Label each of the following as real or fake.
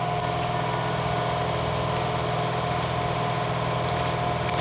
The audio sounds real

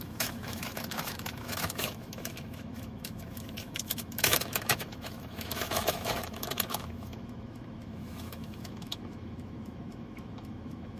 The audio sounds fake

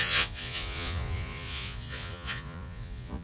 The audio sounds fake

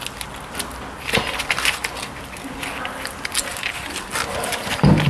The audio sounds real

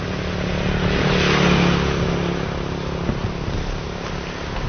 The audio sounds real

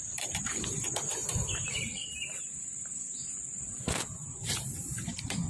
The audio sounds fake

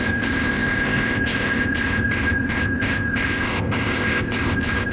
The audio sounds fake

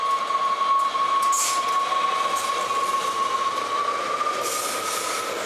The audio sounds real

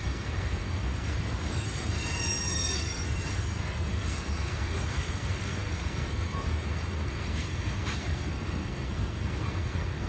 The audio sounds fake